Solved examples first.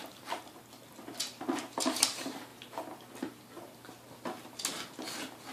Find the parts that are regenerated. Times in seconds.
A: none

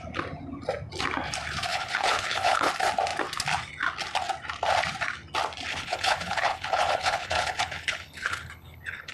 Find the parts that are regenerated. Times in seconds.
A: 1.7-2.7; 5.7-9.1

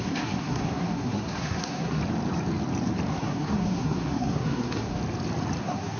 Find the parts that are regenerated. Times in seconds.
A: 0.0-2.0; 3.1-5.0; 5.6-6.0

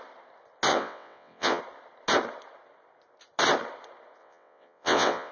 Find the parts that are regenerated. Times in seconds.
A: 0.7-1.6; 4.2-5.3

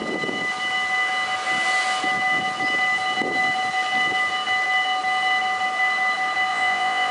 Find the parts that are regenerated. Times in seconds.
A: 6.5-7.1